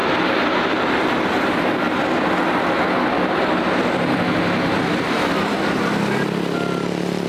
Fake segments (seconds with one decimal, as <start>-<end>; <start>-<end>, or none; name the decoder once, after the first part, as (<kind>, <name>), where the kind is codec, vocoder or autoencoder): 0.0-1.8 (vocoder, BigVGAN v2)